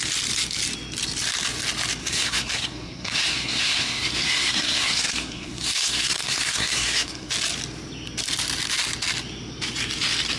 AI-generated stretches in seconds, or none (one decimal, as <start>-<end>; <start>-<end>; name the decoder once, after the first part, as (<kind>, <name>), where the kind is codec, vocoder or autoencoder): 2.0-7.3 (codec, SNAC)